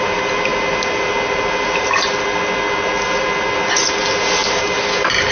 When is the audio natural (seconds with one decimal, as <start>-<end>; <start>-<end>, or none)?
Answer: 0.0-5.3